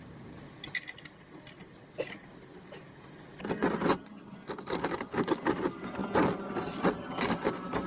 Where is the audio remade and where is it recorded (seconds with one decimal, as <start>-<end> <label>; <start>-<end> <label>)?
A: 0.0-7.9 recorded

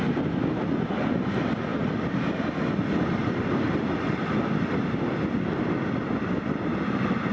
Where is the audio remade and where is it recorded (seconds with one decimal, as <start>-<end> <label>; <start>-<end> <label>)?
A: 0.0-7.3 recorded

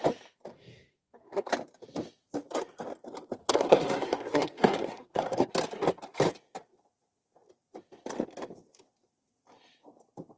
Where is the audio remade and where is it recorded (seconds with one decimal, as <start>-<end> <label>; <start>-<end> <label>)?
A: 0.0-0.5 recorded; 0.5-1.5 remade; 1.5-3.4 recorded; 3.4-5.5 remade; 5.5-10.4 recorded

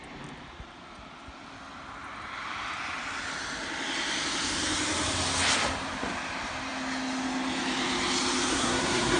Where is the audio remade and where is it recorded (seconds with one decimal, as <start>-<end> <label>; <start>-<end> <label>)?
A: 0.0-8.5 recorded; 8.5-9.2 remade

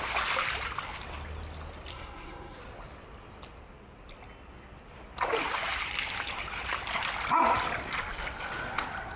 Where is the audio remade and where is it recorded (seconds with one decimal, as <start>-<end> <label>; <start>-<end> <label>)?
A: 0.0-1.9 recorded; 1.9-2.6 remade; 2.6-9.2 recorded

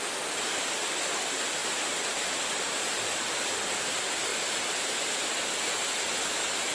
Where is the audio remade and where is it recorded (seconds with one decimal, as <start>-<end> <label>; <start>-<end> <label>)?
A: 0.0-6.7 recorded

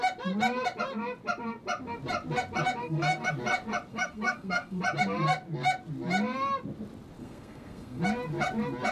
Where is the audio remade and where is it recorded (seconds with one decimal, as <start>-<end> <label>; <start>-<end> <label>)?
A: 0.0-2.8 recorded; 2.8-3.3 remade; 3.3-3.9 recorded; 3.9-4.8 remade; 4.8-7.2 recorded; 7.2-8.0 remade; 8.0-8.9 recorded

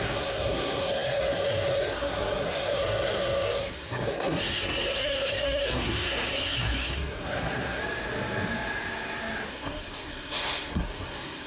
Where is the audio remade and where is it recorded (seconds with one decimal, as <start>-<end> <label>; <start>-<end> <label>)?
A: 0.0-7.8 remade; 7.8-9.5 recorded; 9.5-11.5 remade